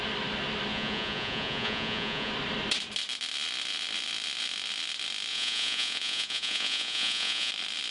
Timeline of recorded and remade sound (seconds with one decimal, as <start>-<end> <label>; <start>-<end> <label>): 0.0-0.7 recorded; 0.7-2.3 remade; 2.3-5.3 recorded; 5.3-7.5 remade; 7.5-7.9 recorded